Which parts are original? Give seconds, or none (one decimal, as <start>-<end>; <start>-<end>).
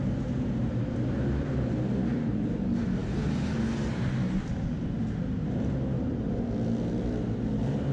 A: 0.0-7.9